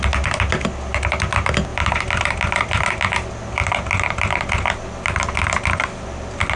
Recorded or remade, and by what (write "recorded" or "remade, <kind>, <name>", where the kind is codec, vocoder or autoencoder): recorded